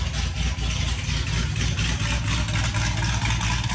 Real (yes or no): yes